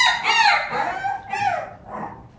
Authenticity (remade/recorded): recorded